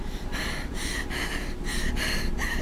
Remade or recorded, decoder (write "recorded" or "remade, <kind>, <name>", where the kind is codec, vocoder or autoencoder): recorded